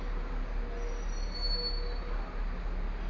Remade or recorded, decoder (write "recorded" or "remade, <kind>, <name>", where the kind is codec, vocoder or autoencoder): recorded